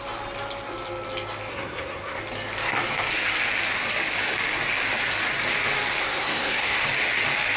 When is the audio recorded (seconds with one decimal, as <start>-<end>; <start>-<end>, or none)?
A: 0.0-1.5; 2.2-6.0; 6.8-7.6